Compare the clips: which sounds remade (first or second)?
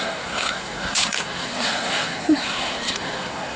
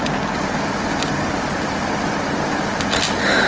first